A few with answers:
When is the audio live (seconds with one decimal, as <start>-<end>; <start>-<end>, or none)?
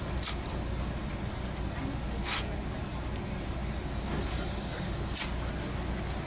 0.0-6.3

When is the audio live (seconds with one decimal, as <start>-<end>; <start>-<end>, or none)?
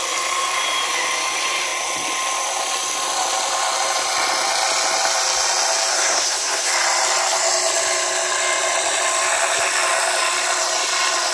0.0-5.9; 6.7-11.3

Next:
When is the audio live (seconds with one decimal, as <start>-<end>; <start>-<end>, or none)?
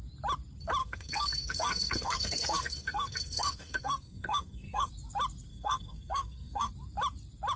0.0-0.8; 4.9-5.5; 6.7-7.6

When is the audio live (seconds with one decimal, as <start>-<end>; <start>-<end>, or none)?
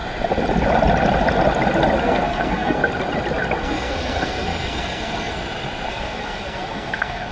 0.0-2.0; 2.8-3.6; 5.4-5.9